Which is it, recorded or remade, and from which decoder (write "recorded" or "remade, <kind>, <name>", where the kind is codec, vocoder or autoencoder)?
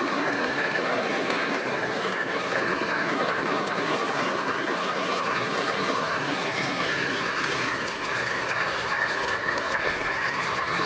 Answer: remade, codec, SNAC